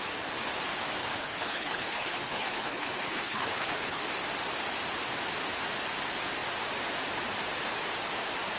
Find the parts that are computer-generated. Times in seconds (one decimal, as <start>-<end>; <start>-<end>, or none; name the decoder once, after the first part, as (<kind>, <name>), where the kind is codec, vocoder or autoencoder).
1.0-4.0 (codec, HILCodec)